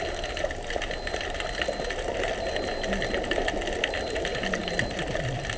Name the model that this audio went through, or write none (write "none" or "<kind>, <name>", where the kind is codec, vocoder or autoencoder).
none